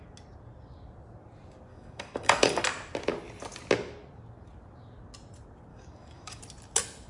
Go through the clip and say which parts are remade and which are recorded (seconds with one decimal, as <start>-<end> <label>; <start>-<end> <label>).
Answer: 0.0-1.7 recorded; 1.7-2.6 remade; 2.6-5.7 recorded; 5.7-6.4 remade; 6.4-7.1 recorded